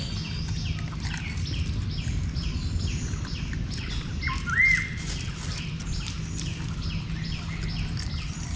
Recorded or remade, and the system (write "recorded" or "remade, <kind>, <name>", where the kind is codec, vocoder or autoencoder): recorded